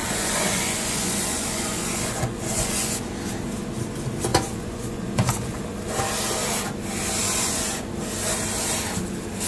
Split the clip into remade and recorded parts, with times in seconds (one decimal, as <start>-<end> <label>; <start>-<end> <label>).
0.0-3.0 remade; 3.0-4.3 recorded; 4.3-5.6 remade; 5.6-7.2 recorded; 7.2-7.9 remade; 7.9-9.5 recorded